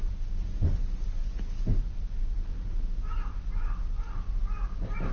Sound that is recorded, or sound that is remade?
recorded